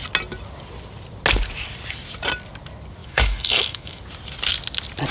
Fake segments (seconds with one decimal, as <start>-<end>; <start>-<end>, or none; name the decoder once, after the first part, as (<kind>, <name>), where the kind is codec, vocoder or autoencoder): 3.0-4.0 (autoencoder, DAC-VAE)